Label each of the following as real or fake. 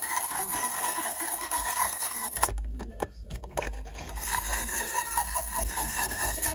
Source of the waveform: fake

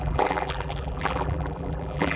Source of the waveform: fake